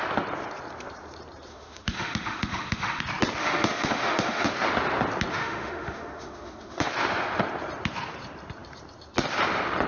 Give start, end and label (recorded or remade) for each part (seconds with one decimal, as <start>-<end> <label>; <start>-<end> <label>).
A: 0.0-1.5 recorded; 1.5-3.0 remade; 3.0-3.4 recorded; 3.4-4.5 remade; 4.5-5.3 recorded; 5.3-6.9 remade; 6.9-9.9 recorded